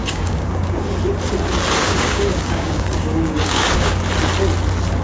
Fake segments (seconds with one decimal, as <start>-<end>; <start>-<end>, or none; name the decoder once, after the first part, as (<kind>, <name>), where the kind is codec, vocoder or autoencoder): 0.0-0.8 (codec, DAC); 1.8-4.0